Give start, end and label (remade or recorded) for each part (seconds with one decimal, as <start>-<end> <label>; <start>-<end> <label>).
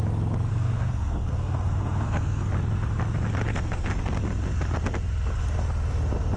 0.0-0.5 recorded; 0.5-2.5 remade; 2.5-3.5 recorded; 3.5-4.2 remade; 4.2-6.4 recorded